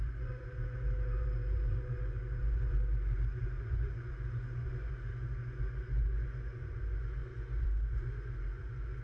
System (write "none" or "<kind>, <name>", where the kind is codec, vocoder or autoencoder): vocoder, Vocos